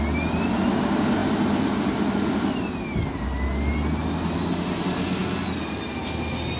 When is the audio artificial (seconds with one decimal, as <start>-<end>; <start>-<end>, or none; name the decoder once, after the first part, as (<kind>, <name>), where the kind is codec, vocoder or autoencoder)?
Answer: none